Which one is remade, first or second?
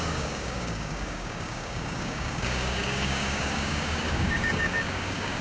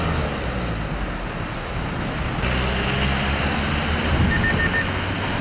first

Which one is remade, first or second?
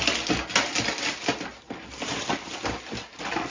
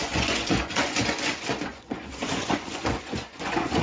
second